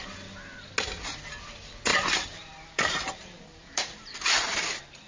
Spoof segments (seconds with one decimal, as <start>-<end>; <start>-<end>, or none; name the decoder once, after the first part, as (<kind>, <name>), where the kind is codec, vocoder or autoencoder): 1.9-4.5 (vocoder, BigVGAN v2)